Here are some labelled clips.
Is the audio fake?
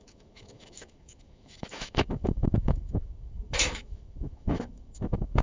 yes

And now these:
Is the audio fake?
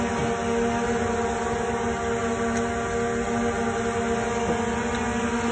no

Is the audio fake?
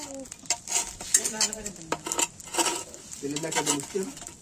no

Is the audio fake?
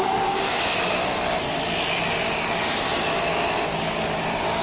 no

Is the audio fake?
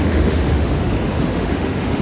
yes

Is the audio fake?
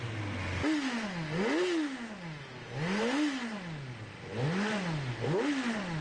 no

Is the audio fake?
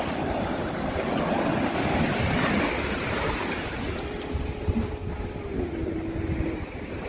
no